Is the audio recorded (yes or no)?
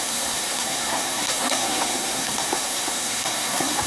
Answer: no